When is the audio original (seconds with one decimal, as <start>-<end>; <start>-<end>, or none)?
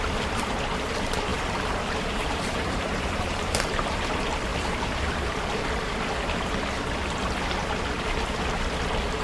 0.0-1.3; 3.7-4.5; 5.6-9.2